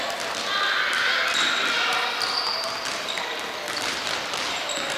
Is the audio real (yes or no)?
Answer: yes